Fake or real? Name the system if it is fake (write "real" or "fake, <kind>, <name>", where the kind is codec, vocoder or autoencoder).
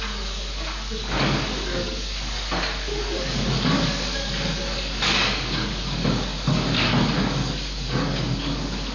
fake, codec, DAC